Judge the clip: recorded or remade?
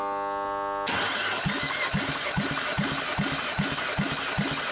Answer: recorded